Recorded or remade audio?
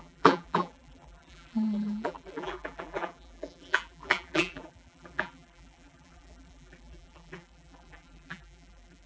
remade